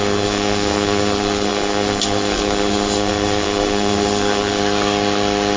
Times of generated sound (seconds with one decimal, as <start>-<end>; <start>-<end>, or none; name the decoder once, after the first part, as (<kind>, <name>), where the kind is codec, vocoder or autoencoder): 0.0-4.6 (codec, SNAC)